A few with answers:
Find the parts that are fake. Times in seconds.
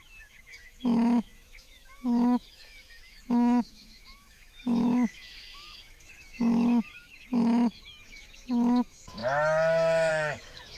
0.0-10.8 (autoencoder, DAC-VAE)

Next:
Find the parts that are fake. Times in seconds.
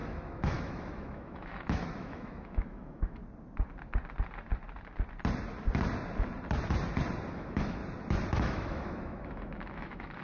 0.0-3.2 (autoencoder, DAC-VAE); 7.3-7.8; 8.3-10.2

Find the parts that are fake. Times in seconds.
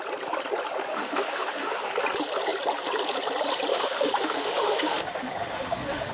0.9-1.9 (autoencoder, DAC-VAE); 3.7-6.1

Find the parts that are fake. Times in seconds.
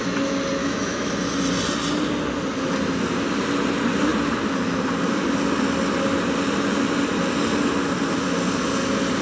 0.6-1.1 (autoencoder, DAC-VAE)